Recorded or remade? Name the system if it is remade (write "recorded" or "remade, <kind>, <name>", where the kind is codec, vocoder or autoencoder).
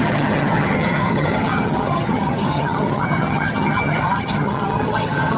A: remade, vocoder, HiFi-GAN